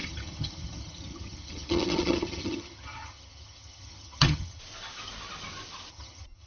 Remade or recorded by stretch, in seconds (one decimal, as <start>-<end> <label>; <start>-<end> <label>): 0.0-4.6 remade; 4.6-5.9 recorded; 5.9-6.5 remade